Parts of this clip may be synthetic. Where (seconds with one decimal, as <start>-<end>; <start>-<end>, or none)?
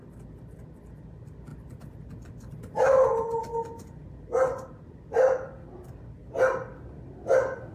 none